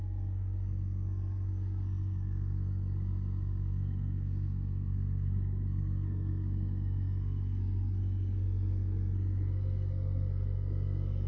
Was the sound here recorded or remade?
remade